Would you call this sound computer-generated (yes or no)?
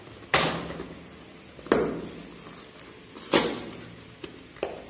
no